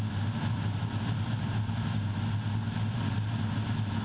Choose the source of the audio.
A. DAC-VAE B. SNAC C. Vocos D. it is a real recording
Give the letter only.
D